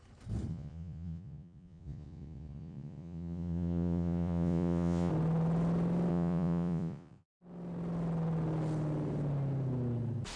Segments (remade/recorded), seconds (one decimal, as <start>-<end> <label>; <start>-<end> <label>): 0.0-0.5 recorded; 0.5-5.1 remade; 5.1-6.1 recorded; 6.1-7.4 remade; 7.4-10.4 recorded